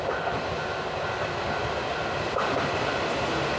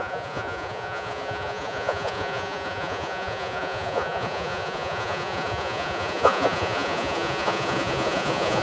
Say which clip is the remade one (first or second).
second